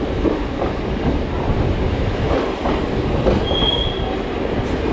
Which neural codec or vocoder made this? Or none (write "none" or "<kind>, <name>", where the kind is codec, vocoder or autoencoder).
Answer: none